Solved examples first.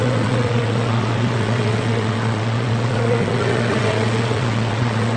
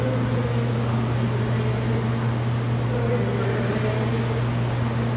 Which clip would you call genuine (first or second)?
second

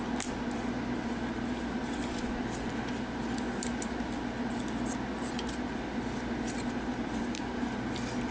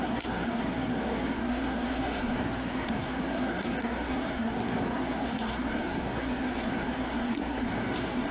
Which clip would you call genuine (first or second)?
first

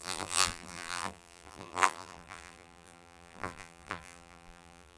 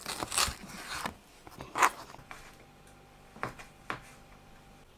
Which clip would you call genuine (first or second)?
second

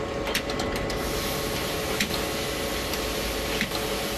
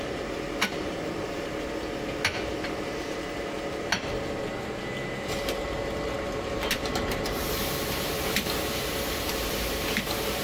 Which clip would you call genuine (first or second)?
first